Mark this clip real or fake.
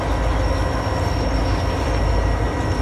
real